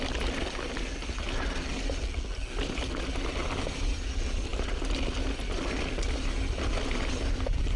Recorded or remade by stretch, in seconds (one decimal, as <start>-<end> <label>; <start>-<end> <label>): 0.0-7.8 recorded